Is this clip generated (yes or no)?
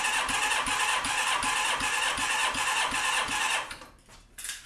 no